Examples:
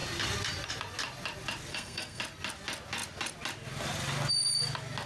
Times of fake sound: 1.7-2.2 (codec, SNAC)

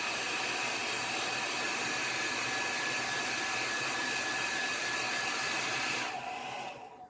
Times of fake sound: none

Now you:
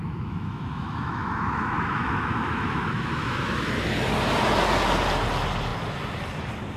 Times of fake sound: 0.0-3.7 (autoencoder, DAC-VAE)

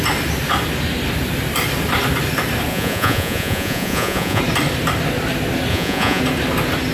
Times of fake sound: 2.7-4.4 (vocoder, Vocos); 5.7-6.2

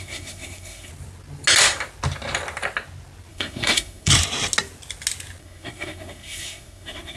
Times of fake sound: 0.0-0.9 (codec, SNAC); 3.3-4.1; 5.4-7.2

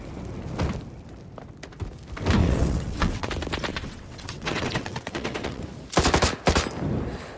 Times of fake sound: 2.4-3.3 (vocoder, WaveNeXt); 3.7-5.6

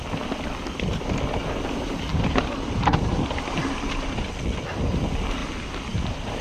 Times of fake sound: 2.1-4.3 (vocoder, BigVGAN v2)

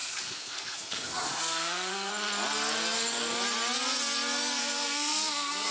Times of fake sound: 0.0-2.1 (codec, SNAC); 4.6-5.7